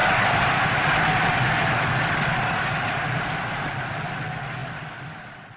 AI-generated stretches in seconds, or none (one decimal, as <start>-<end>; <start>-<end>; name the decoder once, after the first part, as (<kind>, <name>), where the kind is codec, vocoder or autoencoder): none